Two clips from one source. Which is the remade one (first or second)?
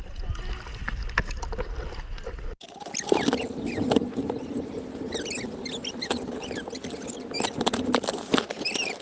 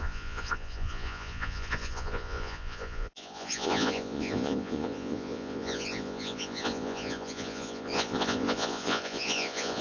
second